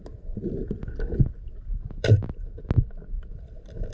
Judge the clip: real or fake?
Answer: real